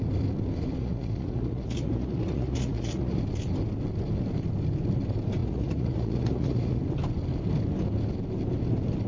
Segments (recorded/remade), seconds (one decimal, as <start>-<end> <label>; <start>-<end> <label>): 0.0-0.8 recorded; 0.8-3.2 remade; 3.2-5.4 recorded; 5.4-6.8 remade; 6.8-9.1 recorded